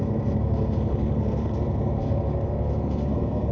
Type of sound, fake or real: fake